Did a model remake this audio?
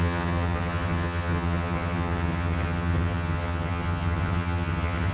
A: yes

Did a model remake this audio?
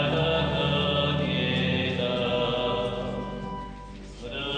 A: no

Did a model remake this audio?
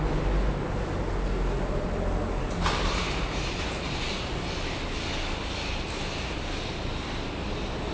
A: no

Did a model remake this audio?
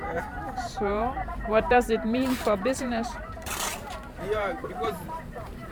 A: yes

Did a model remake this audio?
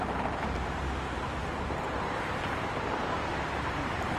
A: yes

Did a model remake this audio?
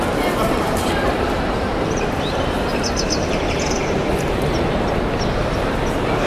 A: yes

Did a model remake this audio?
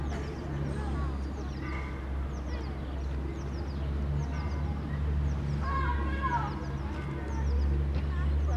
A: no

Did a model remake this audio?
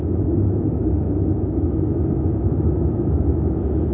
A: yes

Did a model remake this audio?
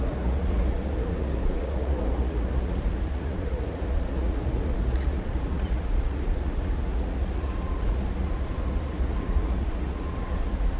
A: yes